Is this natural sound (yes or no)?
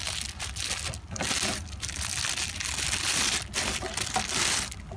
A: yes